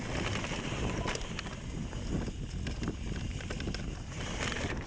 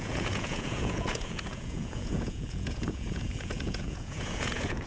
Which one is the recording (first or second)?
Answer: first